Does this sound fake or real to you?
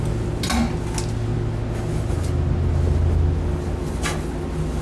real